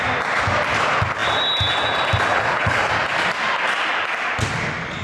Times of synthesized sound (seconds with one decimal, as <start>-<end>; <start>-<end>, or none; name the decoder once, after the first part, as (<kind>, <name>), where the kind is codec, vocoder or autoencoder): 2.3-2.9 (codec, HILCodec)